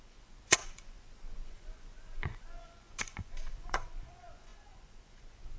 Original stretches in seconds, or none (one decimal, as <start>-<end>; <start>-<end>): none